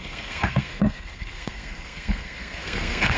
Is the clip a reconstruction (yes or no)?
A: yes